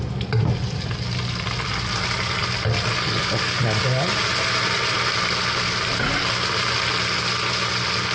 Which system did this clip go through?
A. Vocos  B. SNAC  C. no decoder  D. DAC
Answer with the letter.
C